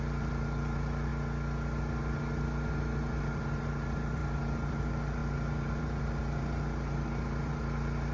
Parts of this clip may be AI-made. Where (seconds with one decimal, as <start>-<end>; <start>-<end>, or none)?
0.0-1.1; 3.2-4.2; 4.7-8.1

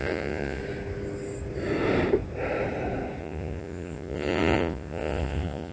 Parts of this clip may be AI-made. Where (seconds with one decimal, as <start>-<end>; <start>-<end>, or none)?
0.0-0.6; 3.2-5.7

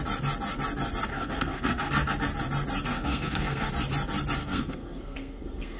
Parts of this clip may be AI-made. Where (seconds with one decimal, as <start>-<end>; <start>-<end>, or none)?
1.1-1.9; 2.9-3.7; 4.4-5.8

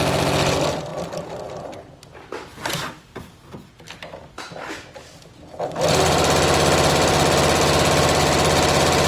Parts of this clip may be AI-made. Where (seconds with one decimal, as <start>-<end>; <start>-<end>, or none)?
none

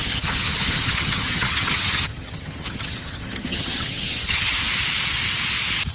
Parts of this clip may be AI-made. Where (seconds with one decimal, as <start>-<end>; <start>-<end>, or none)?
0.0-4.6

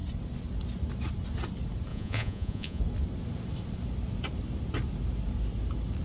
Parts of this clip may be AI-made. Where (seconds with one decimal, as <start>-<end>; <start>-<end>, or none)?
1.9-2.8